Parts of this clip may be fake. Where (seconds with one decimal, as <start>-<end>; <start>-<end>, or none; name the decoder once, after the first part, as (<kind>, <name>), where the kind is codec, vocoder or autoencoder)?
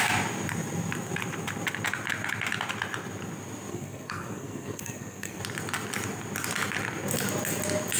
3.7-5.4 (codec, SNAC)